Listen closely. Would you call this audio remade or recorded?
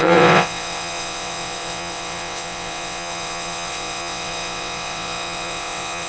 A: remade